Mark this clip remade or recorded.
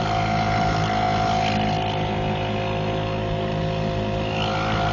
recorded